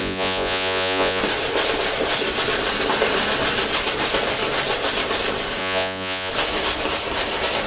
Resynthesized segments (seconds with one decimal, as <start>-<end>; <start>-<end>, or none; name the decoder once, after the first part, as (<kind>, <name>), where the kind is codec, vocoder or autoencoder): 0.0-1.2 (vocoder, Vocos); 5.6-6.3